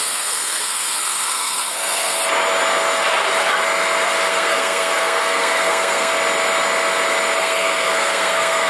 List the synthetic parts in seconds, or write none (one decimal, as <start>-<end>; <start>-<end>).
0.0-2.2; 4.3-6.1; 7.4-8.7